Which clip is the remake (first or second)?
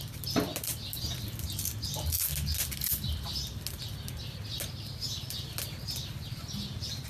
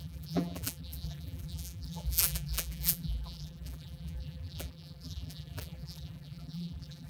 second